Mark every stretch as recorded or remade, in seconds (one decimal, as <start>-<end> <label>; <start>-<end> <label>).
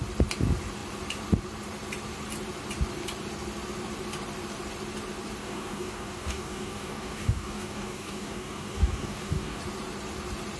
0.0-5.4 recorded; 5.4-9.6 remade; 9.6-10.6 recorded